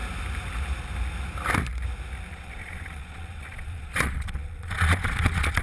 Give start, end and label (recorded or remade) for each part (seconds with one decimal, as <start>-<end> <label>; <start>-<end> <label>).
0.0-2.3 recorded; 2.3-5.6 remade